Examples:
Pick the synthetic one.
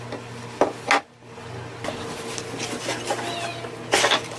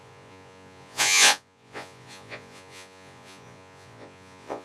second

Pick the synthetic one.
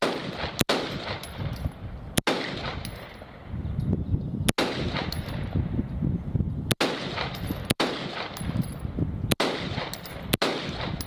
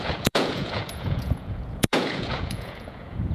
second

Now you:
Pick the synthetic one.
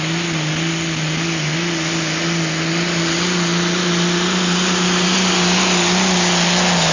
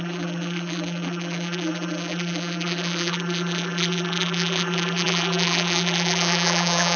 second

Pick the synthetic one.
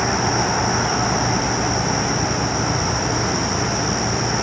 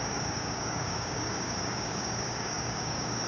second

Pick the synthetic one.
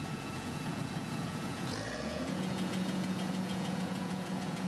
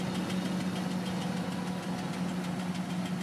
first